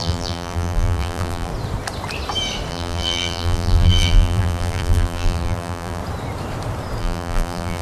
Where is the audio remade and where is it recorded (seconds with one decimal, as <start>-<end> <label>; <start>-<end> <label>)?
0.0-1.5 remade; 1.5-2.7 recorded; 2.7-6.0 remade; 6.0-7.0 recorded; 7.0-7.8 remade